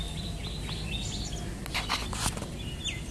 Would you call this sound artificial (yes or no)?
no